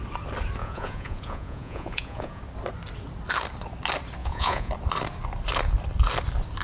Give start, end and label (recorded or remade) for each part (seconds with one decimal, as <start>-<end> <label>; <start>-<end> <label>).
0.0-0.6 recorded; 0.6-2.4 remade; 2.4-4.2 recorded; 4.2-4.7 remade; 4.7-6.6 recorded